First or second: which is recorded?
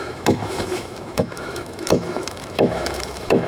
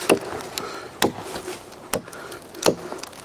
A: second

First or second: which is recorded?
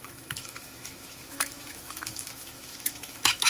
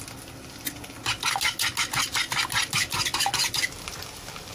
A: second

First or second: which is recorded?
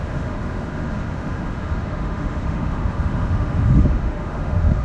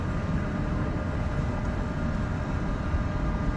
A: second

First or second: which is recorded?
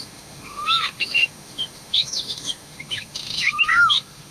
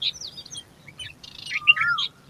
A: second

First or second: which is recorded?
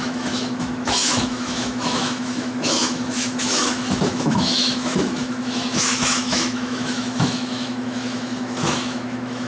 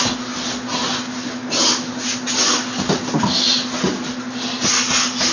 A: second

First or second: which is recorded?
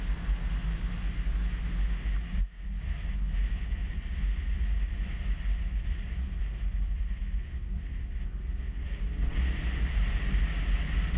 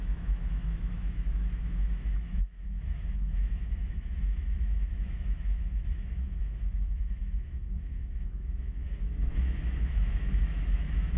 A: first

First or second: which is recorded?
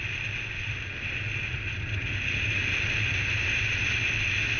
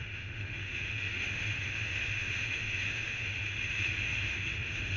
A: first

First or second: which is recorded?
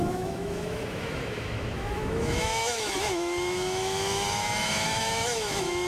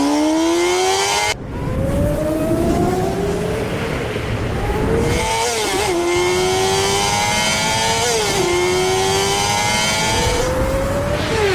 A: second